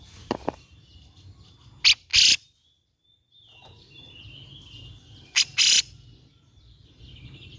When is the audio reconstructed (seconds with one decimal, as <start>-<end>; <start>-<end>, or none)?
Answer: none